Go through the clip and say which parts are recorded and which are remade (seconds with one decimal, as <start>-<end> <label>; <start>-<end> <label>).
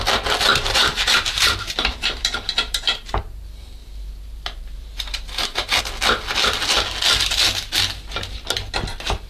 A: 0.0-0.5 recorded; 0.5-3.1 remade; 3.1-3.8 recorded; 3.8-5.8 remade; 5.8-9.3 recorded